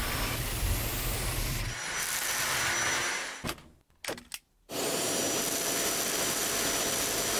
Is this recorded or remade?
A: recorded